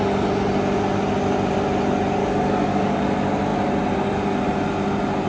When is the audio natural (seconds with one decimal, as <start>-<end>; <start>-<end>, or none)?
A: 0.0-2.2; 3.0-5.3